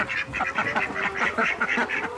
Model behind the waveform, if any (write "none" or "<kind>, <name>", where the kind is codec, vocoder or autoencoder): none